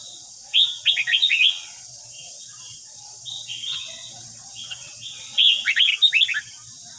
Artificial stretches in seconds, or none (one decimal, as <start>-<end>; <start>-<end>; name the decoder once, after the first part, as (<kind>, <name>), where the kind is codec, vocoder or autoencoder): 0.0-5.9 (vocoder, WaveNeXt)